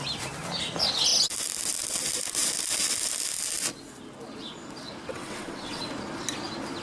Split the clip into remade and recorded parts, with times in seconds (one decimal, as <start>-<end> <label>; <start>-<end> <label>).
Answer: 0.0-5.1 recorded; 5.1-5.9 remade; 5.9-6.8 recorded